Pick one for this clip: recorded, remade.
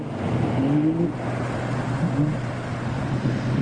recorded